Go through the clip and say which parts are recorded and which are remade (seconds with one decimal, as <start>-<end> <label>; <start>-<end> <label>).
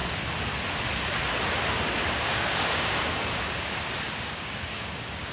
0.0-2.2 recorded; 2.2-5.3 remade